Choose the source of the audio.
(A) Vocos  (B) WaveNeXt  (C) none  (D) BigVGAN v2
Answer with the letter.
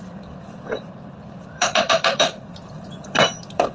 D